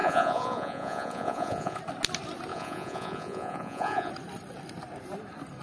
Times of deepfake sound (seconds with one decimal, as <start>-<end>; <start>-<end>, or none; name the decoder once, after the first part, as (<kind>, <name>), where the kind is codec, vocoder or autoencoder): 0.0-1.8 (vocoder, Vocos); 2.5-4.1